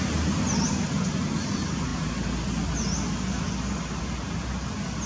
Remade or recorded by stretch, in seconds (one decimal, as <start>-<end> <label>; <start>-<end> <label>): 0.0-5.1 recorded